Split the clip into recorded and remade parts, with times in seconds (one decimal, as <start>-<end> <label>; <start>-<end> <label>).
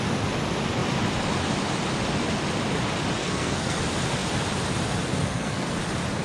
0.0-3.2 recorded; 3.2-3.8 remade; 3.8-5.2 recorded; 5.2-5.7 remade; 5.7-6.2 recorded